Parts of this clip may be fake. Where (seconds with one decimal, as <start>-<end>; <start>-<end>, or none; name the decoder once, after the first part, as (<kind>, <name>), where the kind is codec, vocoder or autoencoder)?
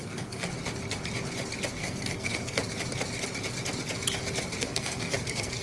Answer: 0.0-0.5 (codec, SNAC); 1.7-2.6; 4.6-5.6